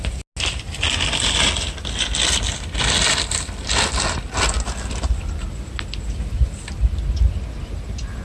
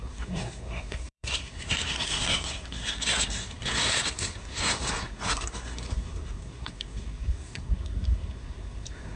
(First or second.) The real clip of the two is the first